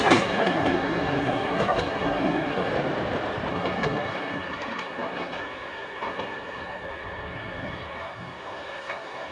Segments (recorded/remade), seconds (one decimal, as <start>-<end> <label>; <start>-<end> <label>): 0.0-2.7 remade; 2.7-3.5 recorded; 3.5-9.3 remade